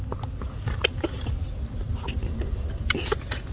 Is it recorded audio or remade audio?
recorded